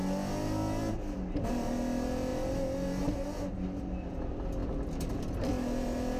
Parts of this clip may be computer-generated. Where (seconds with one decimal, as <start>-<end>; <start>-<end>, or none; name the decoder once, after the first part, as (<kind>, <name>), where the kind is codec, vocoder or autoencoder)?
none